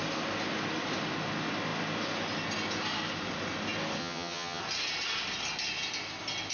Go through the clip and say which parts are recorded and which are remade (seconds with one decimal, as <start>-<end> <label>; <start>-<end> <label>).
0.0-4.0 recorded; 4.0-4.6 remade; 4.6-6.5 recorded